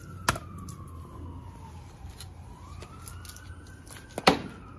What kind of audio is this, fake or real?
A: real